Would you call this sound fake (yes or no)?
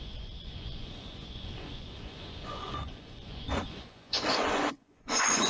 yes